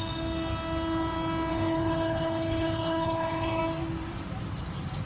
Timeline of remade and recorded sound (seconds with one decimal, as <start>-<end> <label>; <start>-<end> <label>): 0.0-1.5 recorded; 1.5-3.6 remade; 3.6-5.1 recorded